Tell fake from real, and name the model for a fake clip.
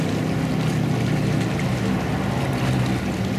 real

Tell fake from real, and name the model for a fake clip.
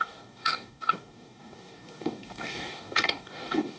fake, codec, DAC